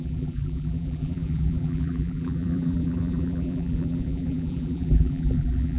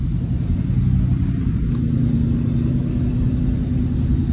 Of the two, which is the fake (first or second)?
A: first